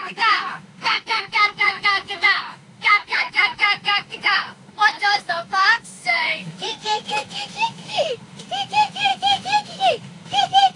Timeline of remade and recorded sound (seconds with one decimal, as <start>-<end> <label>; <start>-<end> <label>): 0.0-10.8 remade